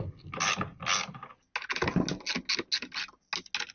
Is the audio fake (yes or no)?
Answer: no